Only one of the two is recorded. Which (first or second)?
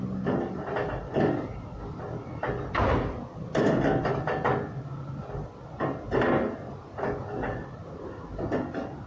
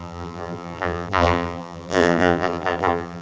first